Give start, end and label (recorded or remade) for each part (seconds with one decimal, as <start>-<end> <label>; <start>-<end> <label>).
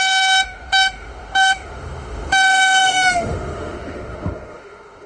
0.0-5.1 remade